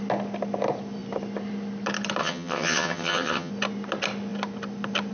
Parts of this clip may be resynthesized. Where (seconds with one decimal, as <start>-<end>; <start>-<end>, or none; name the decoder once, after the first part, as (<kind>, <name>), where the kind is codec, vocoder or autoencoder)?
2.2-3.5 (vocoder, HiFi-GAN)